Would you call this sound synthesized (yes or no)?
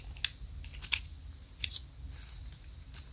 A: no